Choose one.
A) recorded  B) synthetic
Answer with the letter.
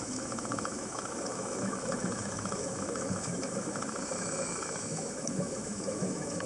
B